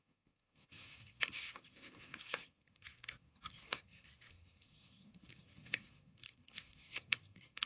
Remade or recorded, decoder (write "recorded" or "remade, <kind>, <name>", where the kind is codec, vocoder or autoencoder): remade, codec, SNAC